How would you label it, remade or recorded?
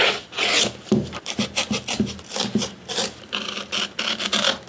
recorded